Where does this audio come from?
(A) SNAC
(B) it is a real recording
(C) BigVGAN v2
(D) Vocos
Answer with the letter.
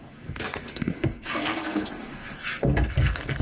A